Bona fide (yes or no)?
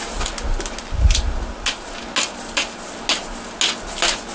yes